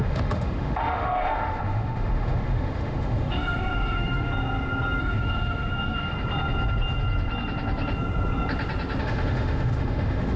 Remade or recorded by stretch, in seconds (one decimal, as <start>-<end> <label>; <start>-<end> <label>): 0.0-4.3 remade; 4.3-5.0 recorded; 5.0-6.1 remade; 6.1-9.0 recorded; 9.0-10.4 remade